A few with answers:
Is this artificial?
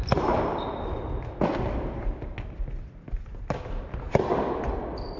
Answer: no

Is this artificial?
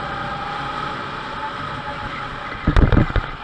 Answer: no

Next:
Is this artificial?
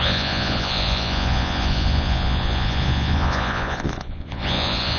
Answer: yes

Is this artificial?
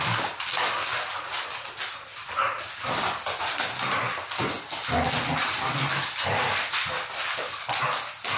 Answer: no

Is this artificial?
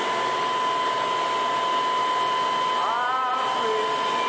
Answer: no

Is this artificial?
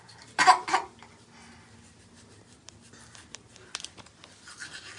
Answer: no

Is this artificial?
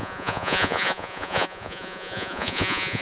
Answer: yes